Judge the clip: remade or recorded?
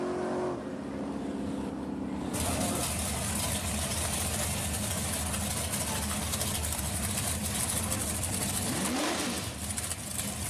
recorded